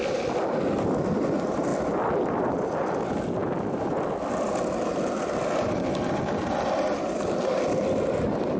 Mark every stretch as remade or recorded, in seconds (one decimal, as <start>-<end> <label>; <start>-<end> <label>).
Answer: 0.0-8.6 recorded